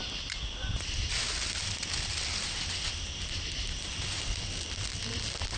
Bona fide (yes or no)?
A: yes